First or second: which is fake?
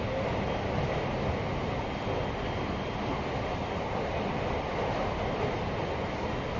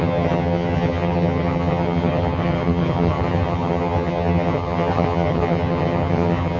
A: second